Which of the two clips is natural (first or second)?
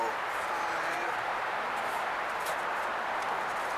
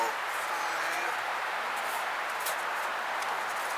second